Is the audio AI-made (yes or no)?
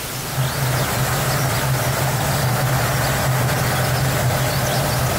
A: no